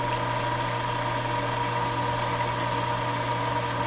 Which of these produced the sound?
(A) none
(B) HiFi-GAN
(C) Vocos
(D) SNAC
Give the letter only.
A